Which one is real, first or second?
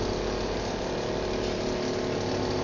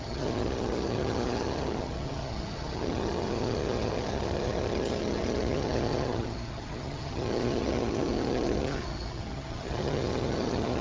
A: first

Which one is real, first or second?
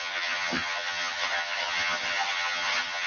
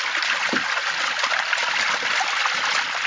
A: second